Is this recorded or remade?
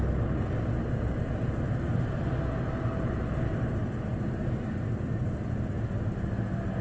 recorded